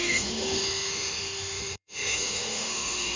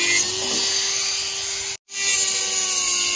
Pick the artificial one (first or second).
first